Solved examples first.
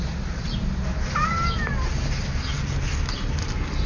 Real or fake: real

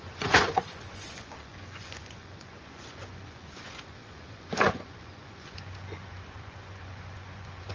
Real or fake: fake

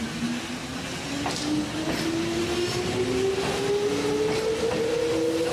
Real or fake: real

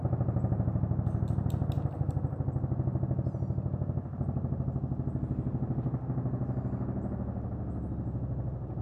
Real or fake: real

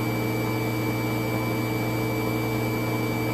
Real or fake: real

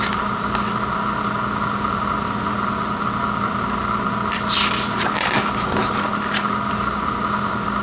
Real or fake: real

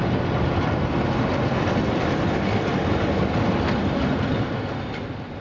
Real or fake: real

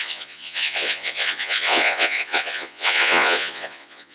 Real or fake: fake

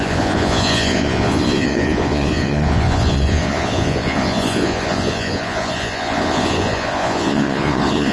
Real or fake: fake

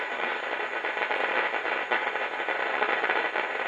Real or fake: fake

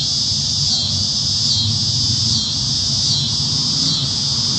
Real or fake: real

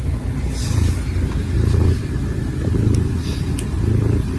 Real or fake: real